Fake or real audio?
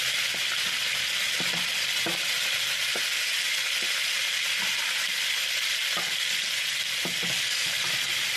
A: real